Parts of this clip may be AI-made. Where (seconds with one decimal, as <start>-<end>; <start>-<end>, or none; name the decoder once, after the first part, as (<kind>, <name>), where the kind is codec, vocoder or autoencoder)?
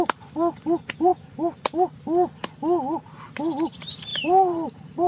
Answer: 4.1-5.1 (vocoder, BigVGAN v2)